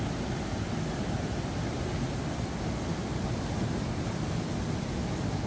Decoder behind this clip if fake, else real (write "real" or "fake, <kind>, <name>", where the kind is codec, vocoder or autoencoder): real